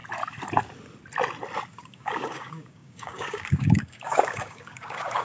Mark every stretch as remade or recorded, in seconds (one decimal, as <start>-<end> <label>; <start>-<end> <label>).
0.0-1.7 recorded; 1.7-5.2 remade